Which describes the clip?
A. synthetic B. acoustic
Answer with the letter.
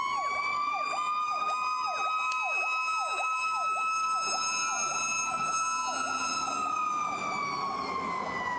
B